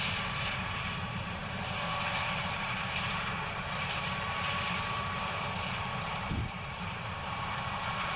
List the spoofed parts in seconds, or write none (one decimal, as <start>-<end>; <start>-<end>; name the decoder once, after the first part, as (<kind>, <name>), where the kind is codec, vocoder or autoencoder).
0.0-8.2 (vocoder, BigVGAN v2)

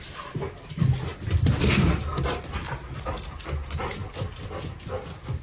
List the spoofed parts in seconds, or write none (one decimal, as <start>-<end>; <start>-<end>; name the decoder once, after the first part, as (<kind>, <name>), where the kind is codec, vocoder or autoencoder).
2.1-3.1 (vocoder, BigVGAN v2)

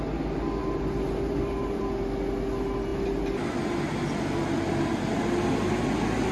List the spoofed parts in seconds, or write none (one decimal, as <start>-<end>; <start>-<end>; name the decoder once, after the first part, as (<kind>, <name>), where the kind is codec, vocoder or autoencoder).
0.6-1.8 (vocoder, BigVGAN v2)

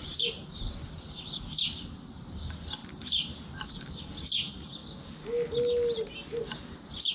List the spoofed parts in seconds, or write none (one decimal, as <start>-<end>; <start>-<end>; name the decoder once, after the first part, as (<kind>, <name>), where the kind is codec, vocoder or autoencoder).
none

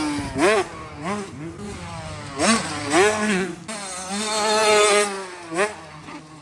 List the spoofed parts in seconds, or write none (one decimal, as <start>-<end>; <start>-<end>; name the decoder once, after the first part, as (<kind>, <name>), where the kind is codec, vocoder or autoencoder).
none

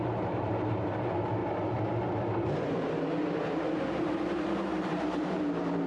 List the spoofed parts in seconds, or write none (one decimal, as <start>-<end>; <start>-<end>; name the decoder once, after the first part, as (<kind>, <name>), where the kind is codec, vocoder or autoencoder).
0.0-1.4 (vocoder, BigVGAN v2); 2.5-5.9